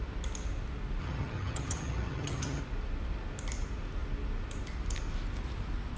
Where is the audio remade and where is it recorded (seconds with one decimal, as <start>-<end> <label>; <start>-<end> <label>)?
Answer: 0.0-1.0 recorded; 1.0-2.6 remade; 2.6-6.0 recorded